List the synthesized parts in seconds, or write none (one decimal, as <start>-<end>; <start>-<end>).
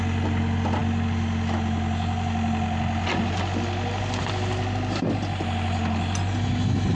none